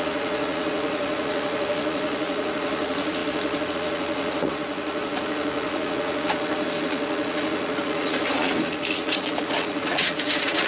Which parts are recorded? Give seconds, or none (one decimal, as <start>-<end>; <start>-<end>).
none

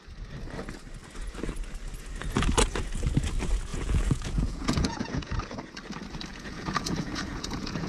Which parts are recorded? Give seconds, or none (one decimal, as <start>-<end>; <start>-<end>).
0.0-3.7; 5.4-6.3

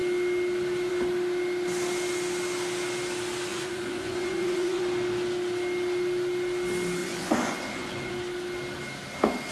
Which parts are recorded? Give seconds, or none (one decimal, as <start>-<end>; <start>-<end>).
0.0-3.5; 4.8-7.0; 8.1-9.5

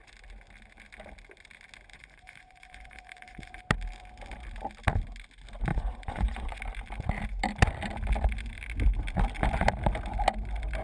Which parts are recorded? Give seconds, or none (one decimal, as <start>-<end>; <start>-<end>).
0.0-1.9; 3.6-5.7; 6.6-10.8

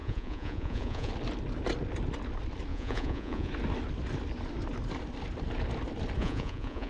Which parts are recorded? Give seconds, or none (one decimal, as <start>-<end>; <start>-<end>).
1.1-2.7; 3.5-6.2